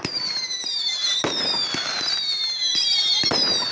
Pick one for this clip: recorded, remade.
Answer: remade